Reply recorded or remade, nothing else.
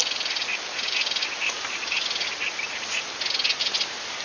recorded